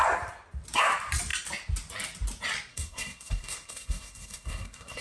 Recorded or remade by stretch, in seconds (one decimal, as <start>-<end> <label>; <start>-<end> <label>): 0.0-2.7 recorded; 2.7-5.0 remade